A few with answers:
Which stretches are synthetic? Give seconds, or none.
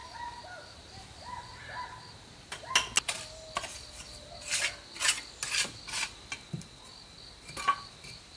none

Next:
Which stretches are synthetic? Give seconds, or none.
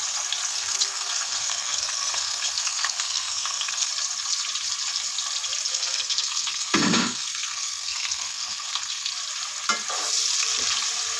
0.5-3.9 (codec, SNAC); 5.7-9.1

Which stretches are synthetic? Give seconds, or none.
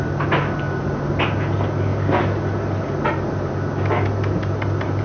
none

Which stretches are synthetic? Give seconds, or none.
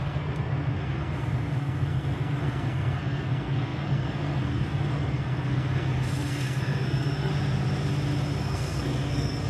0.0-7.3 (codec, SNAC); 8.4-9.5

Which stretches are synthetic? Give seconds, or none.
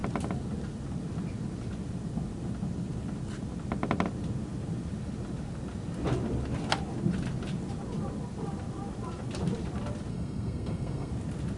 10.1-11.1 (codec, SNAC)